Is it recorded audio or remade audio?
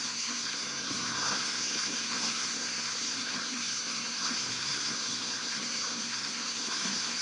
remade